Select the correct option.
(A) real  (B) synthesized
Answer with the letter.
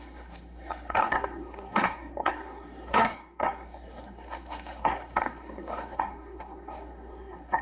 B